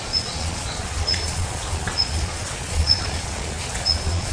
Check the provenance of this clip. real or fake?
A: fake